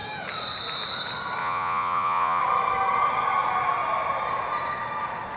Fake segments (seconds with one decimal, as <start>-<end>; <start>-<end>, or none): 1.4-2.4

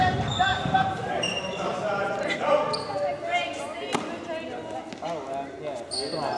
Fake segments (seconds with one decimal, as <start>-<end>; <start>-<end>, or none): 0.5-2.5

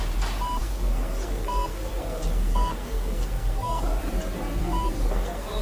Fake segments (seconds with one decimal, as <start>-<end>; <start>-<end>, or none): 0.6-4.0; 4.6-5.6

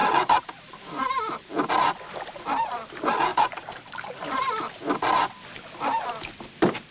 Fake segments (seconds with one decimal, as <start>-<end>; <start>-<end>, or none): 0.0-1.7; 3.3-4.4

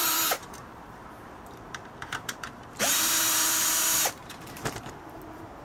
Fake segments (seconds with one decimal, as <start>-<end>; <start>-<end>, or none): 0.0-5.6

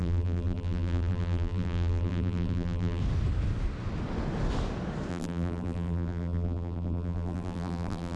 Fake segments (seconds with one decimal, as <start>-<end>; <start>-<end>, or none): 0.0-3.0; 5.1-8.2

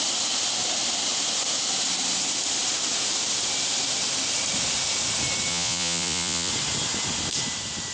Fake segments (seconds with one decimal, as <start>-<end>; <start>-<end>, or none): 5.5-6.5